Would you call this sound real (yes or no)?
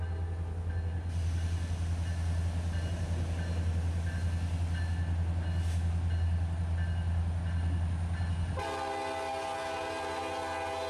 yes